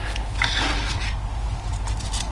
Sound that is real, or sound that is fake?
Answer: real